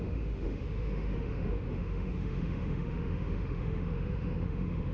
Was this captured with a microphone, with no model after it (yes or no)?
no